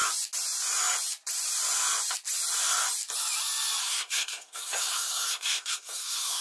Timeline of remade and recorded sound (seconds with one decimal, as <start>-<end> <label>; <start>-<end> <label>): 0.0-3.8 recorded; 3.8-6.4 remade